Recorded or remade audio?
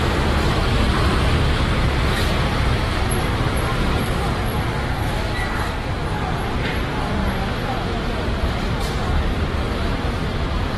remade